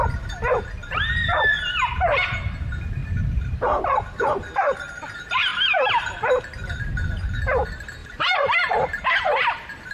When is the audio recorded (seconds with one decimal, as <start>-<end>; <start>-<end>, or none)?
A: 0.0-5.5; 7.4-8.0